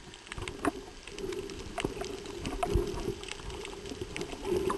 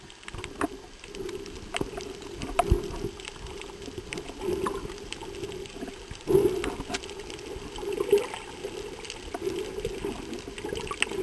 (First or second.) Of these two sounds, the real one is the second